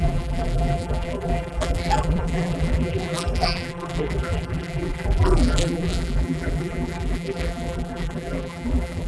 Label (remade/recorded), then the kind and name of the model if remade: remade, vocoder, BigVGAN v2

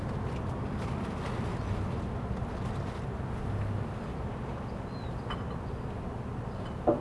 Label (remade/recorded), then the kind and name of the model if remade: recorded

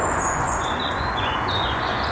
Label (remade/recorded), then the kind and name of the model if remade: remade, vocoder, Vocos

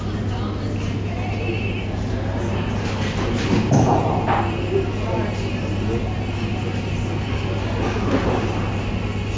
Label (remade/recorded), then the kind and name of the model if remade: recorded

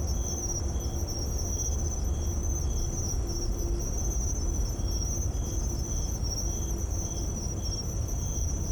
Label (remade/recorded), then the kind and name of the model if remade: recorded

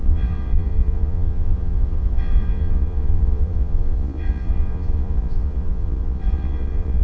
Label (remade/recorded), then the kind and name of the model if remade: remade, vocoder, Vocos